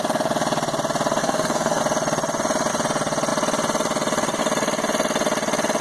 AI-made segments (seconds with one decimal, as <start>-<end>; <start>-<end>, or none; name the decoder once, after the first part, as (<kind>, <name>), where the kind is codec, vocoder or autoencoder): 1.2-1.8 (codec, SNAC)

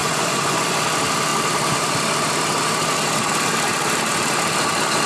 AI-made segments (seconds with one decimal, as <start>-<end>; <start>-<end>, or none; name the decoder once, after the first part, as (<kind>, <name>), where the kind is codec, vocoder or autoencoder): 0.0-0.8 (vocoder, Vocos)

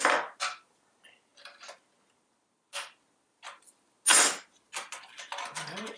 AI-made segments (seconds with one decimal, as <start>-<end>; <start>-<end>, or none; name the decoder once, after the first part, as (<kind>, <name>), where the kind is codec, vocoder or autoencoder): none